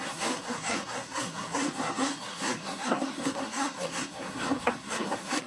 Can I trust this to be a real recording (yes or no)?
no